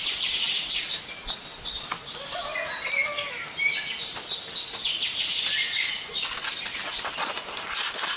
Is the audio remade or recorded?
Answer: recorded